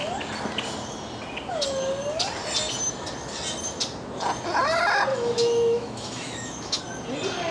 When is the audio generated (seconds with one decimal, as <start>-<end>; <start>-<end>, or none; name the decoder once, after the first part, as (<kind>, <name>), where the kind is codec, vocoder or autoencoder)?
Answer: 5.1-6.8 (autoencoder, DAC-VAE)